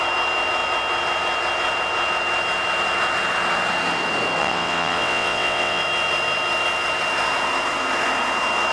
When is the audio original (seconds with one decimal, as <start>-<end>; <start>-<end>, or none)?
0.0-4.4; 5.8-8.7